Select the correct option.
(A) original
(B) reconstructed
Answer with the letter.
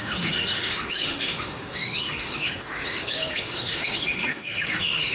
B